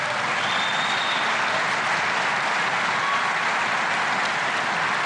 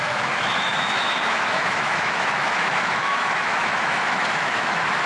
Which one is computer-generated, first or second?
second